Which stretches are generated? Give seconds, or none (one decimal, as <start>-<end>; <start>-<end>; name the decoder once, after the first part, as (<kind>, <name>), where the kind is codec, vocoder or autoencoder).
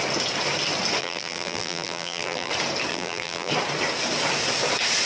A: 1.0-2.5 (vocoder, BigVGAN v2); 2.9-3.5